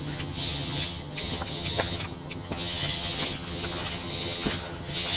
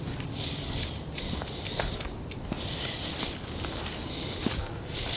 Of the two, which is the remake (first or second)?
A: first